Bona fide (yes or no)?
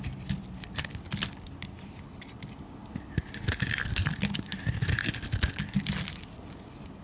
yes